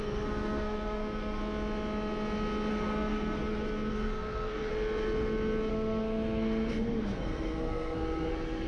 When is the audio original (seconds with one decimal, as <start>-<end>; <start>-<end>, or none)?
1.4-2.7; 3.4-3.9; 4.7-5.7